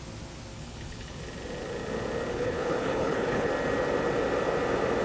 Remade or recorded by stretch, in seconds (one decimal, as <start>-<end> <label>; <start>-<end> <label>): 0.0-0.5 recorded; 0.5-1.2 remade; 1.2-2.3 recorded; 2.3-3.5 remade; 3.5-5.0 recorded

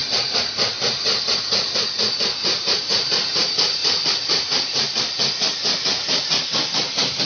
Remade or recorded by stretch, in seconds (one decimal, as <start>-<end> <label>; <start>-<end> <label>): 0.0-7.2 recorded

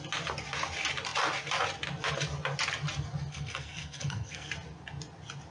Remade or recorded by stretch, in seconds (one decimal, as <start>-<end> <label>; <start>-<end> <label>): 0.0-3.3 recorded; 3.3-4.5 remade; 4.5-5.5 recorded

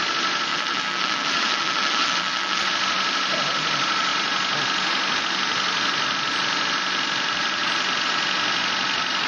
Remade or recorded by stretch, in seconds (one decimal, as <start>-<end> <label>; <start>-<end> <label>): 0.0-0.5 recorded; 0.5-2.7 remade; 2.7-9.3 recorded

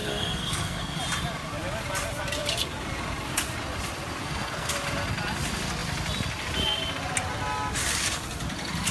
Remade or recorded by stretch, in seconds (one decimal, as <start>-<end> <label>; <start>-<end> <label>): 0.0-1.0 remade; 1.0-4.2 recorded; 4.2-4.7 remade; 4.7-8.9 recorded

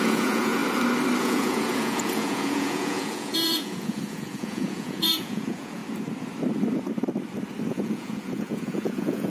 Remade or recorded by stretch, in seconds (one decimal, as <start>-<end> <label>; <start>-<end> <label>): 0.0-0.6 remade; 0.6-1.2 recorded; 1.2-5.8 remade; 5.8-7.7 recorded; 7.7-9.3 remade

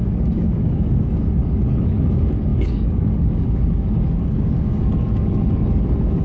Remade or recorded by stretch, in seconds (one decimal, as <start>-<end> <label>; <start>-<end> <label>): 0.0-6.2 remade

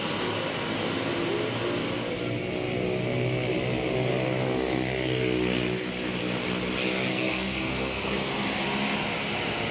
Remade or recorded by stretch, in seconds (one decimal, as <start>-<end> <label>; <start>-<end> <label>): 0.0-7.1 recorded; 7.1-8.3 remade; 8.3-9.7 recorded